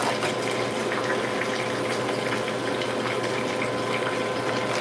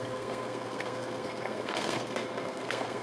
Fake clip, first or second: second